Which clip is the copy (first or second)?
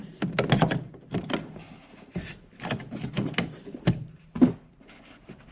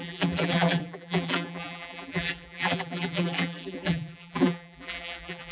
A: second